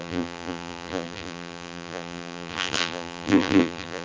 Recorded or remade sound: remade